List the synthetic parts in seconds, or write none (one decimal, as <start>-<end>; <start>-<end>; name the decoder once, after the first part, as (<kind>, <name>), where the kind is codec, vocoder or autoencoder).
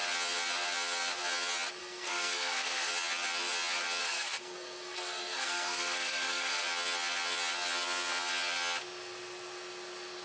1.8-2.9 (codec, SNAC); 4.0-6.6